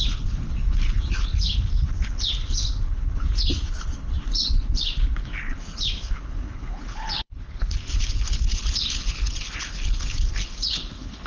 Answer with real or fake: fake